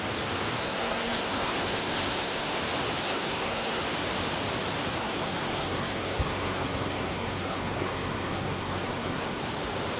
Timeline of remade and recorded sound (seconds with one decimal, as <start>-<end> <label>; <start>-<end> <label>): 0.0-0.6 recorded; 0.6-2.6 remade; 2.6-3.0 recorded; 3.0-3.8 remade; 3.8-5.0 recorded; 5.0-9.4 remade; 9.4-10.0 recorded